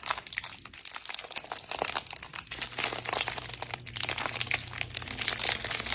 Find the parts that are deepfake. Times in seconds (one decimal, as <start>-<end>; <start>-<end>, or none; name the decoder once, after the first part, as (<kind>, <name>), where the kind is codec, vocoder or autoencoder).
2.3-4.9 (vocoder, BigVGAN v2)